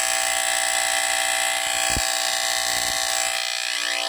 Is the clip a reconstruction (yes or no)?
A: no